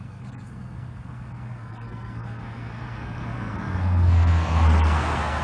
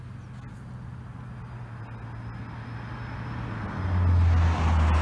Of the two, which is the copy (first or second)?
first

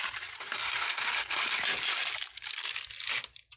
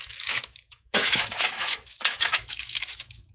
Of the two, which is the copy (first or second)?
second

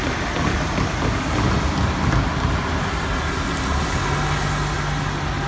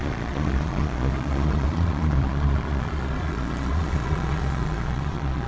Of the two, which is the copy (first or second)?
second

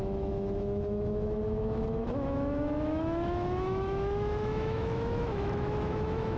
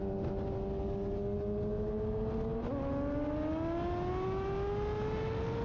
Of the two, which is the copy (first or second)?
first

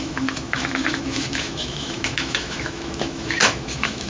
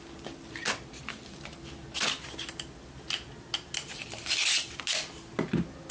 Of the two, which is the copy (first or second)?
first